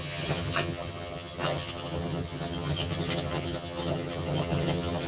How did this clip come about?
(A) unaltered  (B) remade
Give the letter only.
B